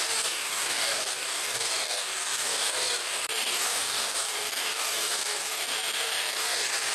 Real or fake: fake